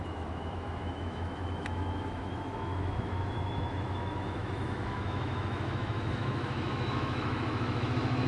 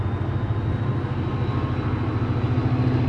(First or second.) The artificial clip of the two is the first